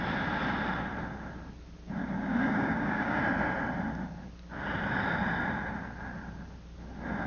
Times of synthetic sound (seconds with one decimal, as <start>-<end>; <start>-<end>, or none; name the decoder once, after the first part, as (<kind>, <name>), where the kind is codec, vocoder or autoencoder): 2.0-3.2 (codec, DAC)